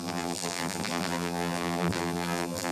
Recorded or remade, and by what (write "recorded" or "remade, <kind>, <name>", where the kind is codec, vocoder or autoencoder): remade, vocoder, BigVGAN v2